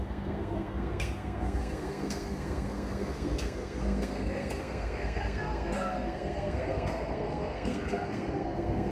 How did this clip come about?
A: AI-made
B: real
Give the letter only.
A